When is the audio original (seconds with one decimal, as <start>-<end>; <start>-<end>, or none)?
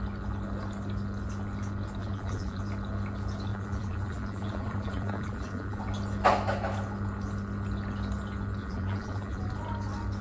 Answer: 0.0-2.0; 2.6-3.5; 5.8-8.6; 9.5-10.2